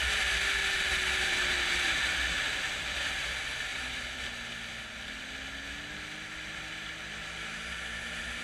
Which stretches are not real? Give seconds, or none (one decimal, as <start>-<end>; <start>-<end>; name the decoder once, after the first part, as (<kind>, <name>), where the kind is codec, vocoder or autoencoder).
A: 0.0-3.3 (vocoder, BigVGAN v2); 3.7-4.2